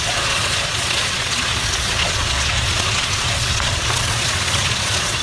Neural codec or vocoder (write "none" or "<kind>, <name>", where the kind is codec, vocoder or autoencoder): vocoder, Vocos